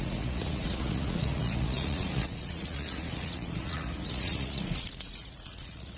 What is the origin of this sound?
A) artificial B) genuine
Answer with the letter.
A